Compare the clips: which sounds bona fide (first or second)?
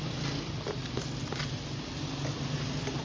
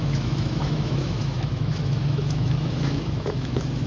first